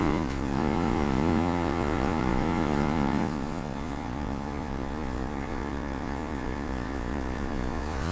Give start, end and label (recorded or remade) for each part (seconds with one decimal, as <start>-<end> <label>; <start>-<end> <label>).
0.0-8.1 remade